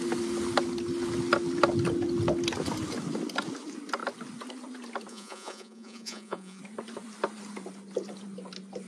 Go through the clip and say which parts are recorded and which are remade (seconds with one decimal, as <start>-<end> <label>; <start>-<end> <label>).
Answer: 0.0-5.1 recorded; 5.1-6.6 remade; 6.6-8.9 recorded